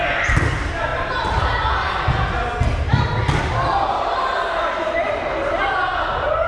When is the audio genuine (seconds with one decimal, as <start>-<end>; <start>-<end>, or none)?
0.0-6.5